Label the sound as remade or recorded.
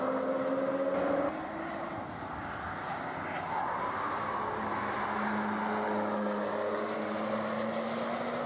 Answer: recorded